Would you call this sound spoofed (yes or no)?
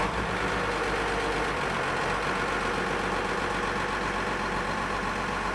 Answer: no